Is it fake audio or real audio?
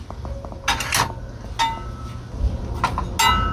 real